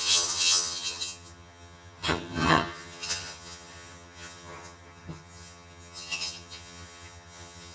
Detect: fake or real fake